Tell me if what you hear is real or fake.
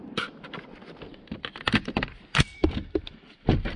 fake